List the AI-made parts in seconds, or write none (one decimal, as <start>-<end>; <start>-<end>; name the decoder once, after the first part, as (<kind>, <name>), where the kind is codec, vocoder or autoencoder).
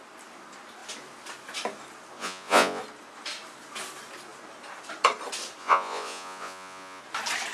2.2-2.8 (vocoder, Vocos); 5.6-7.0